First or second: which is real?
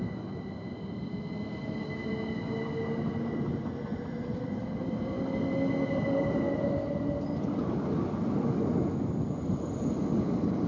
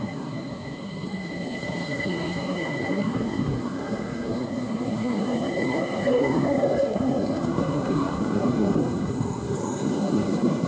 first